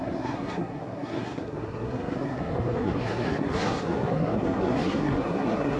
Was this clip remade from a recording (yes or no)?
yes